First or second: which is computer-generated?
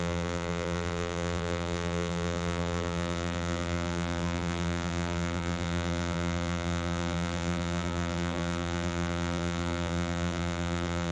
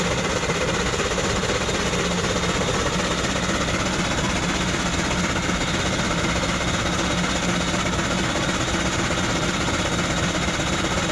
first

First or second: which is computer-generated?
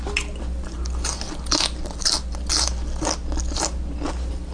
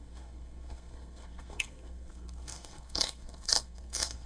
second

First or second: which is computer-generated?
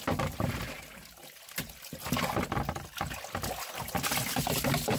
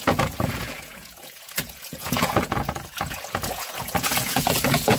second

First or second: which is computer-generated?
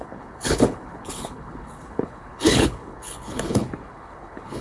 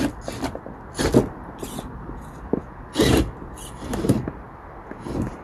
first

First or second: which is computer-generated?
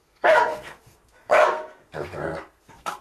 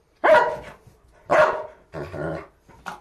first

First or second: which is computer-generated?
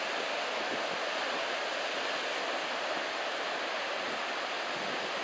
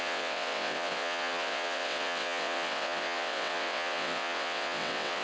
second